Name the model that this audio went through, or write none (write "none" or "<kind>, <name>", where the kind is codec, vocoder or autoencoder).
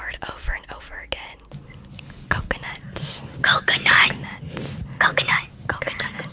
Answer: none